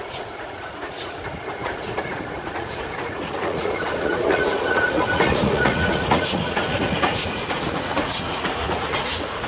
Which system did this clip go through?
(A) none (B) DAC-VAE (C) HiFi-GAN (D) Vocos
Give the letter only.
D